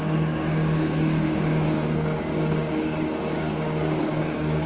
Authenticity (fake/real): fake